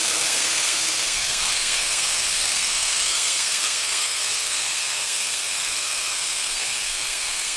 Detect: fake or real fake